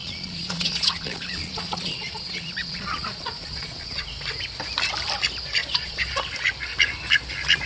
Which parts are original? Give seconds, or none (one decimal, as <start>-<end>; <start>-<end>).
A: 4.1-5.6; 6.2-7.7